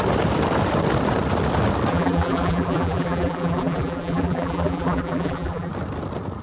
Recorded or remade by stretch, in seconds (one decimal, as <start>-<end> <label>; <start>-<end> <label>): 0.0-1.9 recorded; 1.9-5.7 remade; 5.7-6.4 recorded